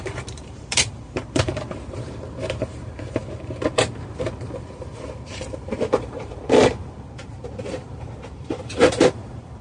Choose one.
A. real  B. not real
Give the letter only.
B